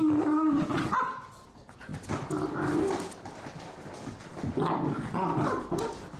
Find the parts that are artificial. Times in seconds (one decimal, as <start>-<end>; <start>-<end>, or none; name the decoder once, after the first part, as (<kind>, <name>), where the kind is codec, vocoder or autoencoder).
1.9-3.6 (vocoder, BigVGAN v2); 4.2-5.4